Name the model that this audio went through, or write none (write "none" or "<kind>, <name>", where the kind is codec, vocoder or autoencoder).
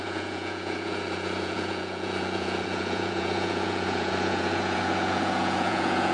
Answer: vocoder, Vocos